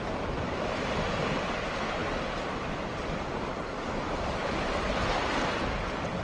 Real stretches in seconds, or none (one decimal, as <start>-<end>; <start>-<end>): 0.0-6.2